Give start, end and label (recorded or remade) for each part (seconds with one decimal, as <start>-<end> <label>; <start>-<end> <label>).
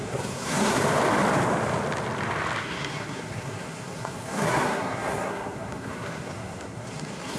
0.0-0.8 remade; 0.8-2.6 recorded; 2.6-7.4 remade